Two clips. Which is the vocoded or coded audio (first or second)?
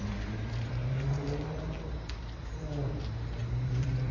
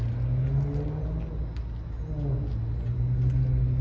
first